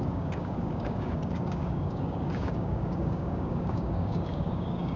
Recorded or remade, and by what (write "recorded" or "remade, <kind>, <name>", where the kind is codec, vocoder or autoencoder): remade, codec, DAC